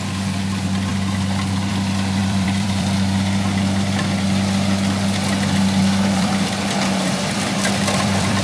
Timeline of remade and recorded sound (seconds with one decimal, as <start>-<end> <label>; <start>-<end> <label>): 0.0-0.9 remade; 0.9-1.7 recorded; 1.7-8.4 remade